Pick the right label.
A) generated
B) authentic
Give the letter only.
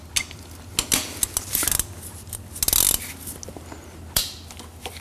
B